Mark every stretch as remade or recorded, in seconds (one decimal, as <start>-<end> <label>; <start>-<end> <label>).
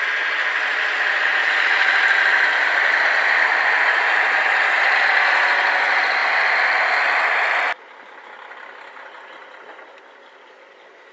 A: 0.0-11.1 recorded